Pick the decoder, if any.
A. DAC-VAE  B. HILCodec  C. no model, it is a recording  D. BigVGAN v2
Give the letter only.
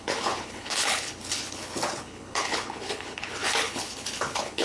B